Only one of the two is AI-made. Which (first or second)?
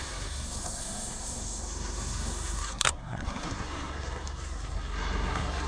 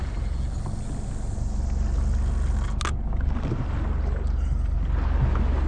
first